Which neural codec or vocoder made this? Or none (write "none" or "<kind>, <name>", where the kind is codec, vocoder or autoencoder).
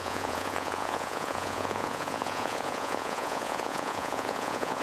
vocoder, Vocos